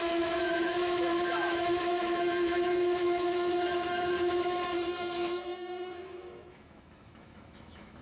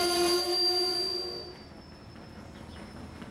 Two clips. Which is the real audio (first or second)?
second